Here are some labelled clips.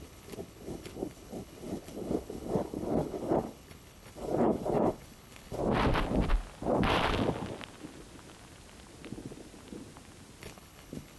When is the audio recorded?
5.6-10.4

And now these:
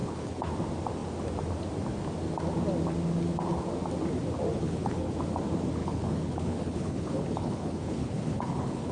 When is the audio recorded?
0.5-4.5; 5.1-5.8

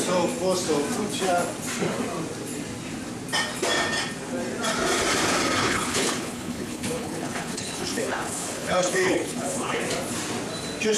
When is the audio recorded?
0.0-5.6; 9.8-11.0

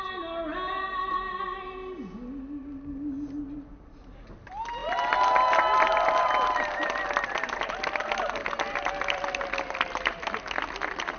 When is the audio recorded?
0.0-11.2

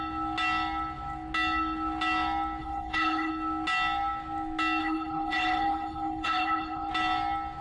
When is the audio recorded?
0.0-2.6; 3.3-4.8; 6.9-7.6

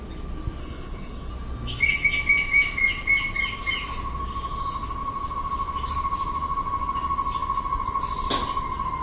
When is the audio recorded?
0.0-0.6; 1.3-9.0

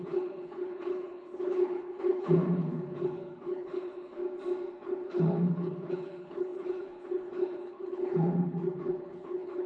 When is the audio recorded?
4.2-4.7

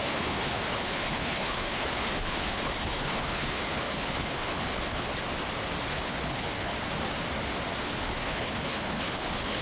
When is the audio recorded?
5.1-5.9; 6.7-7.8